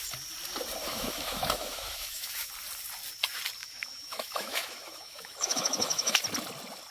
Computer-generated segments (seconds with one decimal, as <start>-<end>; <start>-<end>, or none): 0.8-2.5; 3.6-6.2